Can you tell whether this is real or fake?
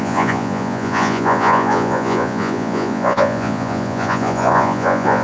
fake